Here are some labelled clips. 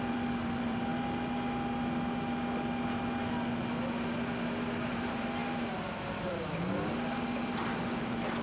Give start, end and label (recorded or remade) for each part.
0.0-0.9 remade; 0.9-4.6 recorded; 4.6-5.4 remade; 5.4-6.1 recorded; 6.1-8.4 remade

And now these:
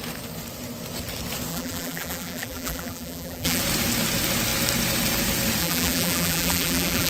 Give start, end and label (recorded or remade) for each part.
0.0-1.5 recorded; 1.5-3.6 remade; 3.6-5.6 recorded; 5.6-7.1 remade